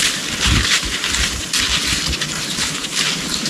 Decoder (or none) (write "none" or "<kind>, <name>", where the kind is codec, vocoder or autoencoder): none